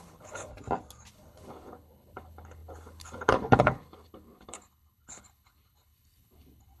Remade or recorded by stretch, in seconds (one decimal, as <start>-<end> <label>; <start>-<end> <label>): 0.0-0.5 remade; 0.5-1.1 recorded; 1.1-6.8 remade